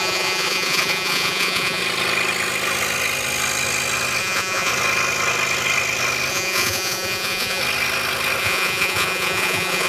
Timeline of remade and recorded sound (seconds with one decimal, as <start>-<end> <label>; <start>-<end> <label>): 0.0-1.8 remade; 1.8-4.2 recorded; 4.2-4.7 remade; 4.7-6.3 recorded; 6.3-7.6 remade; 7.6-8.4 recorded; 8.4-9.9 remade